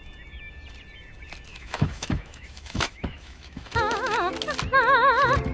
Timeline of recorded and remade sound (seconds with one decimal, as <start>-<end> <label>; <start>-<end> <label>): 0.0-1.5 recorded; 1.5-4.3 remade; 4.3-5.5 recorded